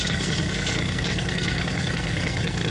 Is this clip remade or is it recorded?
remade